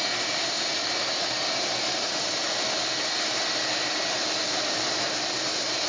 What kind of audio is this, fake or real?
fake